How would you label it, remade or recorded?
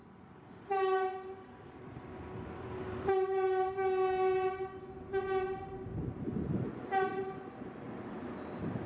recorded